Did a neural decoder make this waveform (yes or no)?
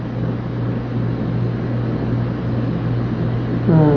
no